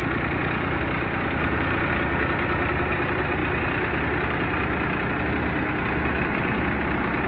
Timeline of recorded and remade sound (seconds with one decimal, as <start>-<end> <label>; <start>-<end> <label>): 0.0-7.3 recorded